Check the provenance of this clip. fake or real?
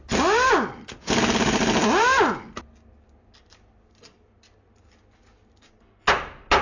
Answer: real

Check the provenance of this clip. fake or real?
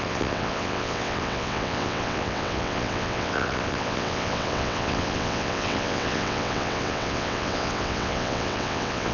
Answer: fake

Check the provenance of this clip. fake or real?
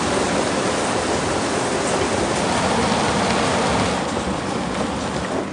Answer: real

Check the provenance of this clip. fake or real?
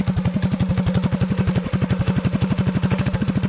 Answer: real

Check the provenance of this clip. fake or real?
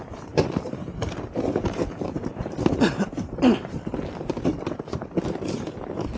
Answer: fake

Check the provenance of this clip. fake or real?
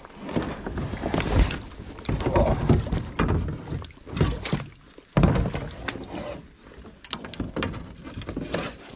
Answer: real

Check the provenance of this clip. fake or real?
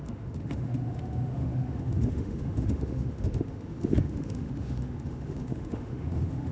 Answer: fake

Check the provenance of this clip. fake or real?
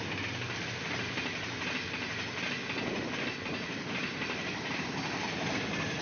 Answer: real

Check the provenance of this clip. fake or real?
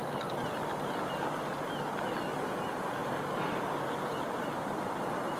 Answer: real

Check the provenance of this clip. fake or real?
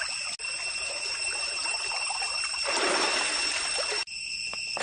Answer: real